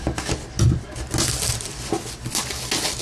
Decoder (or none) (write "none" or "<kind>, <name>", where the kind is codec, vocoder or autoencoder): none